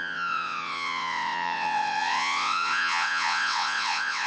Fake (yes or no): yes